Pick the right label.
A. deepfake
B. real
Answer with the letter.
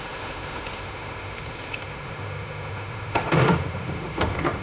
A